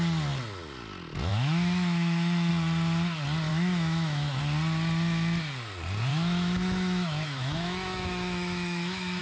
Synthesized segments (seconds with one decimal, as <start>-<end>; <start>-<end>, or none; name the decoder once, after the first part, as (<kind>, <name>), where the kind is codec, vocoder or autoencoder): 1.3-2.5 (autoencoder, DAC-VAE); 3.5-4.4; 6.1-9.2